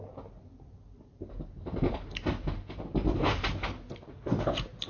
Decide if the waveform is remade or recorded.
recorded